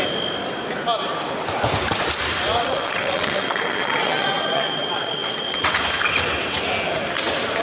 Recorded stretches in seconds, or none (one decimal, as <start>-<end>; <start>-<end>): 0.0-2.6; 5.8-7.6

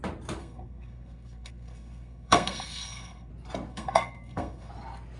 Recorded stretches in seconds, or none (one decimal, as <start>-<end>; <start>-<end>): 0.0-0.4; 3.3-3.7; 4.7-5.2

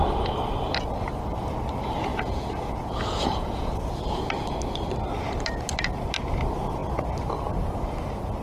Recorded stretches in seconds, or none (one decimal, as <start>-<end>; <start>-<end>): 0.0-2.1; 4.2-8.4